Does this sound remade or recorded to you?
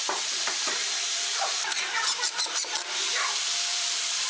remade